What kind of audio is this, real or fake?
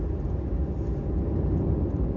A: real